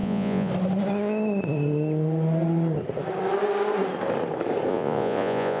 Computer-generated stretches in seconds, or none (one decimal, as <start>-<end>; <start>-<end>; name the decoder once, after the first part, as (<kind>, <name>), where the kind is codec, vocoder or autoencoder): 0.0-0.5 (vocoder, Vocos); 4.7-5.6